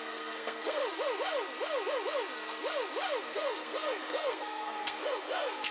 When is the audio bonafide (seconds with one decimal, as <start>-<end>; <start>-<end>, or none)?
0.8-3.2